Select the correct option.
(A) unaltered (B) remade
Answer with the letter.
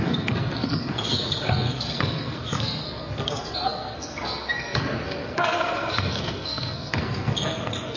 B